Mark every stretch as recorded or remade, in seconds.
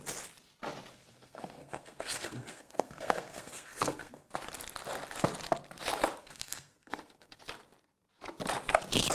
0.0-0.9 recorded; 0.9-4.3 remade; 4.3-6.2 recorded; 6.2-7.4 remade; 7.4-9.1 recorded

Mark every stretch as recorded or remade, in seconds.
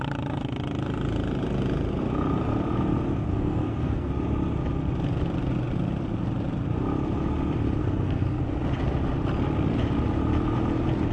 0.0-3.3 recorded; 3.3-4.1 remade; 4.1-7.8 recorded; 7.8-8.4 remade; 8.4-11.1 recorded